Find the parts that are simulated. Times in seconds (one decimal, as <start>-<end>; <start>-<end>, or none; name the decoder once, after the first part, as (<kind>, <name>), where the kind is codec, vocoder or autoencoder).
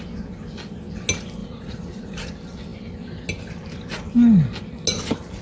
1.4-2.3 (vocoder, Vocos)